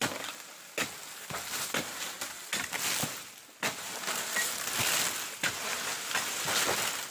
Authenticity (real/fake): real